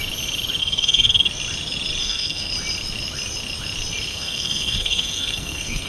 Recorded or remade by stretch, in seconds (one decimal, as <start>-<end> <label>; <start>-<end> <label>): 0.0-0.6 recorded; 0.6-1.3 remade; 1.3-2.0 recorded; 2.0-2.5 remade; 2.5-4.1 recorded; 4.1-5.9 remade